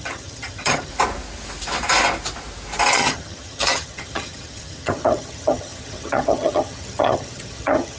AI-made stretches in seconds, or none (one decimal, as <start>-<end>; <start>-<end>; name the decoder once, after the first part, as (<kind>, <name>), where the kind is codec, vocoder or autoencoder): 0.0-0.9 (vocoder, HiFi-GAN); 2.9-8.0